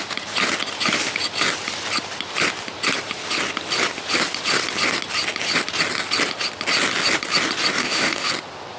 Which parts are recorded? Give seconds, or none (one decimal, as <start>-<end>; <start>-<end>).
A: 0.0-7.8; 8.3-8.8